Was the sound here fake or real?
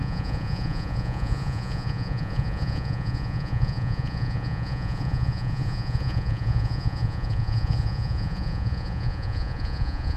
fake